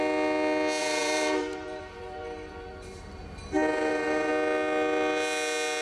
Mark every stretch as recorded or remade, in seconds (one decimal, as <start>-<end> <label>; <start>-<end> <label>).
0.0-0.8 recorded; 0.8-4.3 remade; 4.3-5.8 recorded